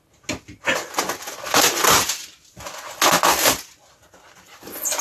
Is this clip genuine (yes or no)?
yes